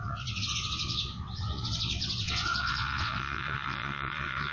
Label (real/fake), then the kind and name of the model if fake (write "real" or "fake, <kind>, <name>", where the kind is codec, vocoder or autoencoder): fake, vocoder, WaveNeXt